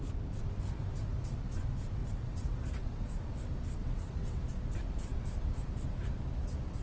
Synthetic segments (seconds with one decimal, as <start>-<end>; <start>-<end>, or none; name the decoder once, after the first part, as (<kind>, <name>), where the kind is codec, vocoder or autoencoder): 2.0-3.1 (vocoder, WaveNeXt); 3.8-4.4